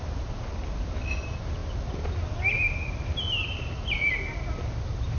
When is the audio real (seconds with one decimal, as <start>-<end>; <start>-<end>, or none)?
0.0-5.2